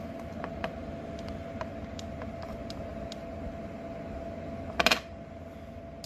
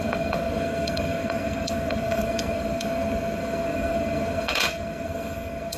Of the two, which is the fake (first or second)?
second